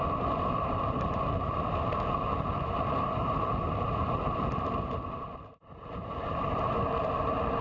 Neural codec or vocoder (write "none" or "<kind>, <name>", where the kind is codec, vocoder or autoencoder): vocoder, BigVGAN v2